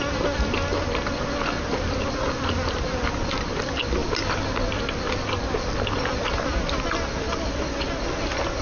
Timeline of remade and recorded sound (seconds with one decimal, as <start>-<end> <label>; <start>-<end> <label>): 0.0-8.6 recorded